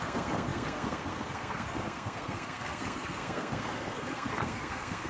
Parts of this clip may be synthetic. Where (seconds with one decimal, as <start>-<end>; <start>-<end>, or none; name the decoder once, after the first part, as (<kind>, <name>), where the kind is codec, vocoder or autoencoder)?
0.0-5.1 (codec, SNAC)